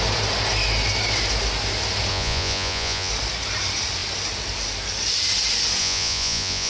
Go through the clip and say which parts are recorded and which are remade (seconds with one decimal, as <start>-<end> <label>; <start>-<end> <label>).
0.0-2.1 recorded; 2.1-3.1 remade; 3.1-5.8 recorded; 5.8-6.7 remade